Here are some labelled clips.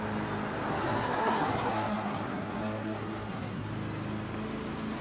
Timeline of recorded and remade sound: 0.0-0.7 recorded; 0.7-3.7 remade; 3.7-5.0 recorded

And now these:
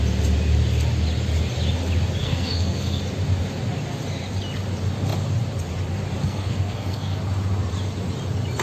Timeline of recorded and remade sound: 0.0-2.2 recorded; 2.2-3.0 remade; 3.0-6.2 recorded; 6.2-7.2 remade; 7.2-8.6 recorded

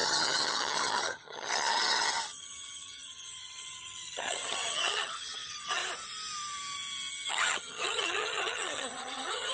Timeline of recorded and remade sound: 0.0-5.8 remade; 5.8-7.1 recorded; 7.1-9.5 remade

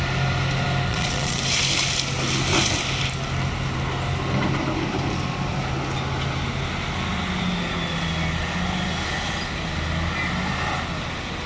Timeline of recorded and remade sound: 0.0-0.9 recorded; 0.9-1.4 remade; 1.4-11.5 recorded

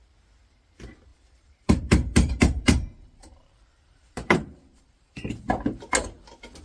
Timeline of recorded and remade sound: 0.0-1.1 recorded; 1.1-5.1 remade; 5.1-6.6 recorded

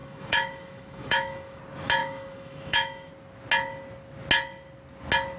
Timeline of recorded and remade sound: 0.0-1.6 remade; 1.6-2.0 recorded; 2.0-3.1 remade; 3.1-5.4 recorded

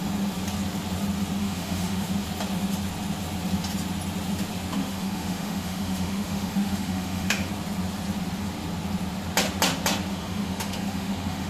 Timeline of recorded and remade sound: 0.0-1.4 recorded; 1.4-2.1 remade; 2.1-4.8 recorded; 4.8-7.5 remade; 7.5-10.1 recorded; 10.1-11.5 remade

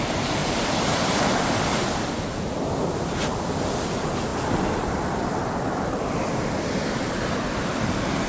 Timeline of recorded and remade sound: 0.0-8.3 recorded